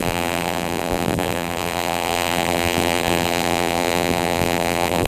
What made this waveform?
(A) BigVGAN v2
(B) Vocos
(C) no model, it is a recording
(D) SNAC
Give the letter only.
A